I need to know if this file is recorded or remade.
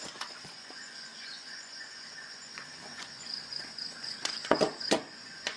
remade